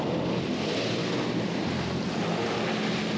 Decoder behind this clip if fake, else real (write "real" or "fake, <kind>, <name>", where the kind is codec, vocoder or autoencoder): real